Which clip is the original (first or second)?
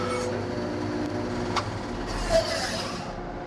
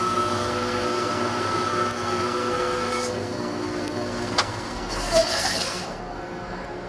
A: first